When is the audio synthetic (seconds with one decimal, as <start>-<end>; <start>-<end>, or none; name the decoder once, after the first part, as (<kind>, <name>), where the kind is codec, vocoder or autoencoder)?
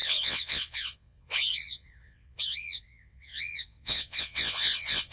0.0-5.1 (vocoder, WaveNeXt)